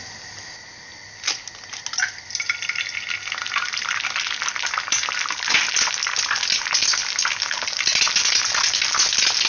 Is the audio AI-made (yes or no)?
no